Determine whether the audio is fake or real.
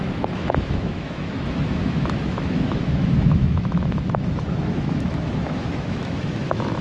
fake